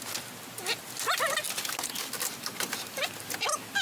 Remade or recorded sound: recorded